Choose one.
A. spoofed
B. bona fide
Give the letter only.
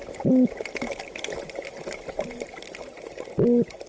B